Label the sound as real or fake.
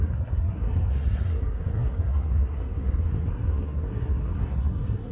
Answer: fake